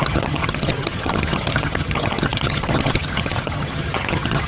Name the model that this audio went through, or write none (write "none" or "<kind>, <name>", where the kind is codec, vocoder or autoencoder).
vocoder, HiFi-GAN